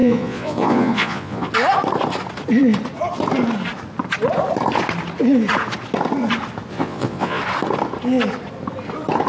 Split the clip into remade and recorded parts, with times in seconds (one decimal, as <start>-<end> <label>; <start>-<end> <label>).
0.0-1.5 remade; 1.5-6.7 recorded; 6.7-7.4 remade; 7.4-9.3 recorded